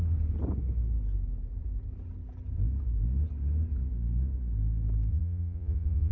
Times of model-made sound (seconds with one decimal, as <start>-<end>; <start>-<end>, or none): 5.1-6.1